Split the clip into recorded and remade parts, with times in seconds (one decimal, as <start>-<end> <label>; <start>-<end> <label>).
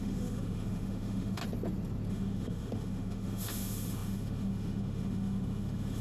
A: 0.0-1.4 remade; 1.4-2.1 recorded; 2.1-6.0 remade